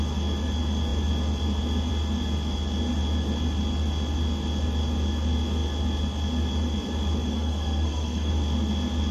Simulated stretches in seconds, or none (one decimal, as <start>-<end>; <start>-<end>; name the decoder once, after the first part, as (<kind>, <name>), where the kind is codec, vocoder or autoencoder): 7.3-8.3 (codec, SNAC)